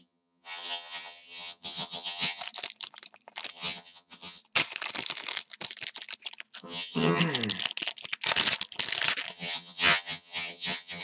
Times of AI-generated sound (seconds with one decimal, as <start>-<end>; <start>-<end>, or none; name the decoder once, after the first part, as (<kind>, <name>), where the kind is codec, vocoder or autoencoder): 0.0-2.4 (vocoder, HiFi-GAN); 3.5-4.4; 6.6-7.2; 9.3-11.0